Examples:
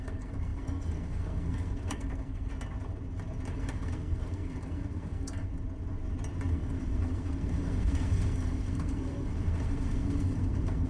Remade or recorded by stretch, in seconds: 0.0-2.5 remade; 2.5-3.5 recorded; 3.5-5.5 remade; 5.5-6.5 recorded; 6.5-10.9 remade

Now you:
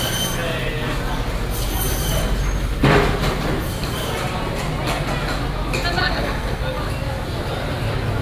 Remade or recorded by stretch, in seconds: 0.0-6.0 recorded; 6.0-6.8 remade; 6.8-8.2 recorded